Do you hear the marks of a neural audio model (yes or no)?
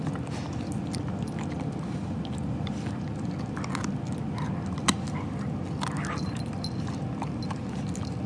no